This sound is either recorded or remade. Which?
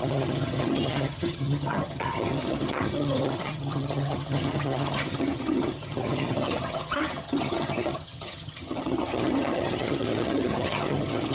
remade